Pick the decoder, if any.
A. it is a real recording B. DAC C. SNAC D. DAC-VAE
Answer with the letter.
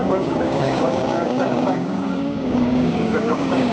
B